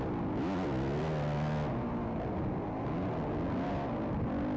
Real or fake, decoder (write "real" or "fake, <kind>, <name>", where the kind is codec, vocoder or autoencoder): real